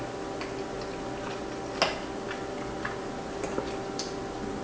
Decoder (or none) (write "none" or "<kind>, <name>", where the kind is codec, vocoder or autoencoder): none